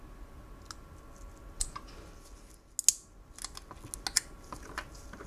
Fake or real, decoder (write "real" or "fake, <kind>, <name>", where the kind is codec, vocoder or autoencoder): real